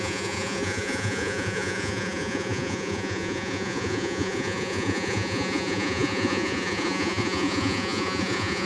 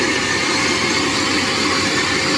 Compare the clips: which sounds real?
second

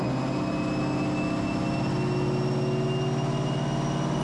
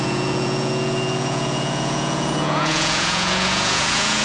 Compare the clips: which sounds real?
first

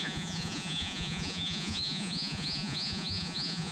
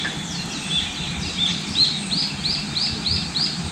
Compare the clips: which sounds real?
second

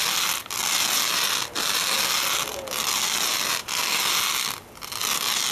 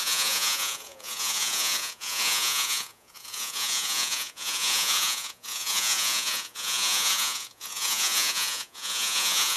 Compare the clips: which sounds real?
first